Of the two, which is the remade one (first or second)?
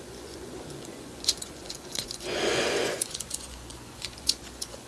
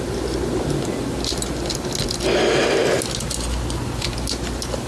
first